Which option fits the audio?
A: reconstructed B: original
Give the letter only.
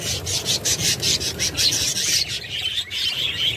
B